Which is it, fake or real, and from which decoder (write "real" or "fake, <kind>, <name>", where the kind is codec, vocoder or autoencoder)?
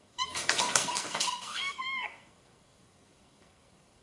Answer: fake, codec, SNAC